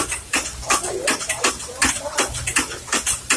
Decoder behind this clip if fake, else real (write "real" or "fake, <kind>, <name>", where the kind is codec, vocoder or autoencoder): fake, vocoder, BigVGAN v2